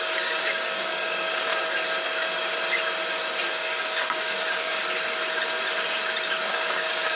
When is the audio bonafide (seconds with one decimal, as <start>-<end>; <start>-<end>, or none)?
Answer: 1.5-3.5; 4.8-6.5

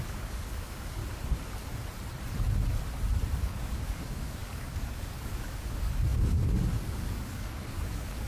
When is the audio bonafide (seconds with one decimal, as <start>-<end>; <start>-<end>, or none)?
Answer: 1.0-3.4

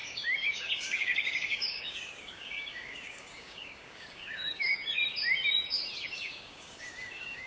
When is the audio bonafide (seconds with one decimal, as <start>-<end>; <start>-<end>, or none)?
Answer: 5.0-6.1